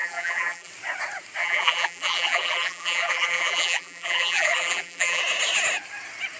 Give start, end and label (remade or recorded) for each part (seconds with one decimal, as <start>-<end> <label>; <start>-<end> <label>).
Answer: 0.0-0.7 remade; 0.7-1.4 recorded; 1.4-5.2 remade; 5.2-6.4 recorded

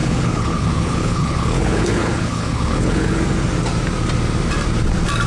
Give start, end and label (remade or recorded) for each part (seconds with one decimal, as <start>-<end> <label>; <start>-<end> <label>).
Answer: 0.0-3.2 remade; 3.2-5.3 recorded